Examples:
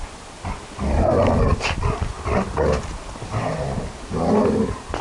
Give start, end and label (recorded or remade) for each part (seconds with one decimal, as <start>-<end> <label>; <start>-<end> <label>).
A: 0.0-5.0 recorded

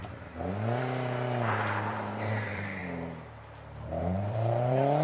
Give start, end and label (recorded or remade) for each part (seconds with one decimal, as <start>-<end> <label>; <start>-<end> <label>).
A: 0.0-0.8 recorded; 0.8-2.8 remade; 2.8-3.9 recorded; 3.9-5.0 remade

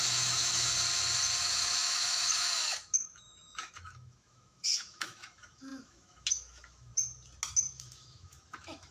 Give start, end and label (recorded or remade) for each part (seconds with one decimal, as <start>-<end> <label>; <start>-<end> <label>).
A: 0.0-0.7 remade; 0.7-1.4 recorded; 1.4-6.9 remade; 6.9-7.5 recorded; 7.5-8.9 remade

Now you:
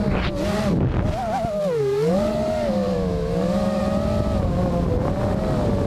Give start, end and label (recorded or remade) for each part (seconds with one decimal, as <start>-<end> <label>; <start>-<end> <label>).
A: 0.0-1.8 recorded; 1.8-3.8 remade; 3.8-5.9 recorded